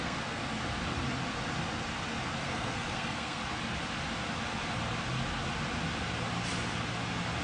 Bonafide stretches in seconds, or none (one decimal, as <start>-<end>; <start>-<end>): 0.4-2.4; 3.4-7.4